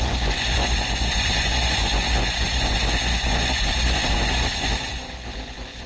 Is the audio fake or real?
fake